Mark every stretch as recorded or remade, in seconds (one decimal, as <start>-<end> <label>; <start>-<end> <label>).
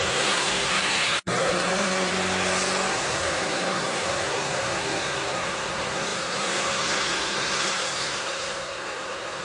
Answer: 0.0-2.1 remade; 2.1-2.9 recorded; 2.9-9.4 remade